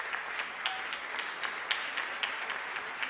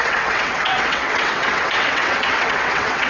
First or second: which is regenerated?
second